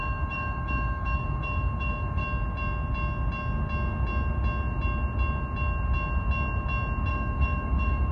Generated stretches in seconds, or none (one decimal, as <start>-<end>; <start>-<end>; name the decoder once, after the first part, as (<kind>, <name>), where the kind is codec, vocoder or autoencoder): 0.0-2.2 (autoencoder, DAC-VAE); 7.1-8.1